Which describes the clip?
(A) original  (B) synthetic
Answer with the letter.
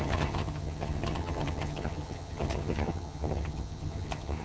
B